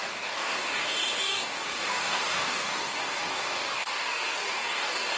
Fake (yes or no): yes